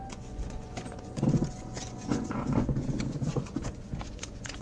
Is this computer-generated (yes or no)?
yes